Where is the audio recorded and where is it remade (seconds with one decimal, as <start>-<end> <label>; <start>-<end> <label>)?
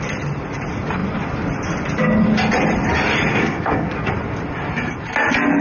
0.0-3.3 recorded; 3.3-4.1 remade; 4.1-5.6 recorded